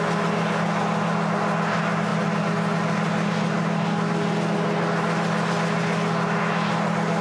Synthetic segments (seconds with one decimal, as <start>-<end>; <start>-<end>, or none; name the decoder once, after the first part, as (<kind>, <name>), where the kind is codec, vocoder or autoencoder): none